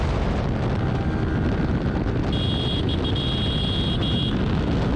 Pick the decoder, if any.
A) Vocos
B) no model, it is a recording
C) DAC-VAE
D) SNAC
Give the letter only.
B